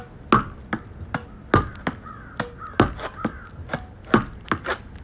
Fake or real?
real